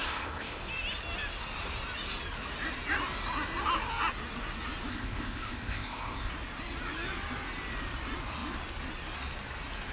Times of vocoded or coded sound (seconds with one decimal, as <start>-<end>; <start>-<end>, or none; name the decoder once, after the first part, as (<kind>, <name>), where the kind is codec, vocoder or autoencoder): 0.0-0.6 (codec, ZipCodec); 4.9-6.3